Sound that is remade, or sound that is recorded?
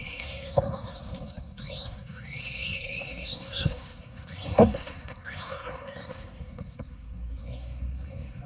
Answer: remade